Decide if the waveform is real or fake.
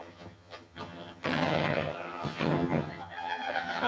fake